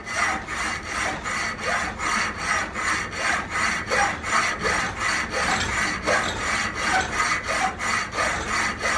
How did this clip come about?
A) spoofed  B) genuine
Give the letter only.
B